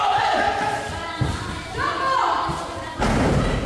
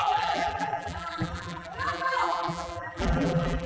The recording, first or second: first